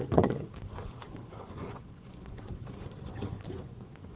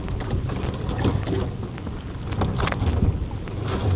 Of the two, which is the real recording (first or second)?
second